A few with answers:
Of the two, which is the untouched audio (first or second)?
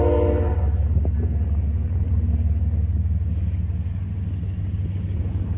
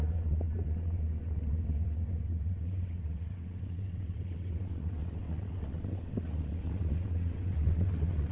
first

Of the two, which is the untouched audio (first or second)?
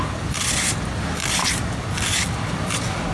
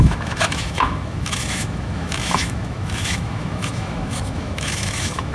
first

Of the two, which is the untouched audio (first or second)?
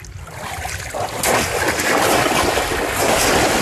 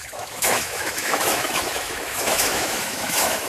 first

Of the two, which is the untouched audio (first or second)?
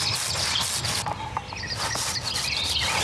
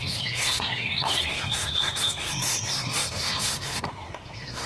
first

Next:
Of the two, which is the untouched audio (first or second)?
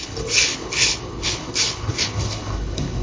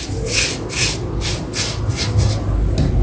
second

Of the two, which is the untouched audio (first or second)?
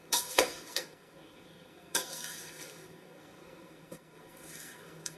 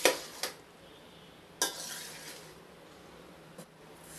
second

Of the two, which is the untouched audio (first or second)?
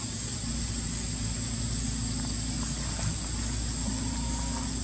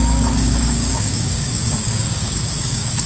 first